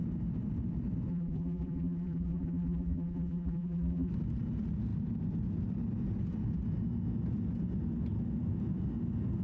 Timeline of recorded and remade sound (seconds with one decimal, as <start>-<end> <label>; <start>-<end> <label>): 0.0-1.1 recorded; 1.1-4.1 remade; 4.1-9.4 recorded